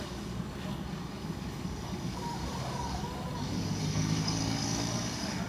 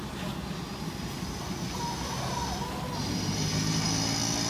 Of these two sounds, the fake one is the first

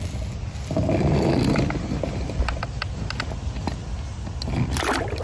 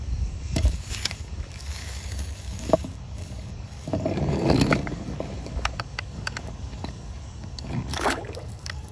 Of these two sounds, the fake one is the second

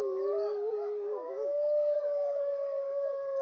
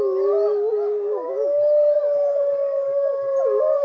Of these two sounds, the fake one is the first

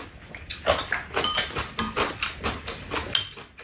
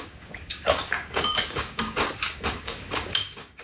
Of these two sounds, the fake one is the second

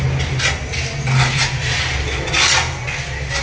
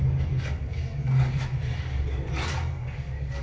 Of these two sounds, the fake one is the second